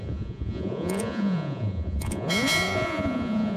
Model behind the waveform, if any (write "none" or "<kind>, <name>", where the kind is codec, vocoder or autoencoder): vocoder, Vocos